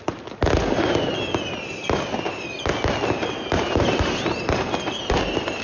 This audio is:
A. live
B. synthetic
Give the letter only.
A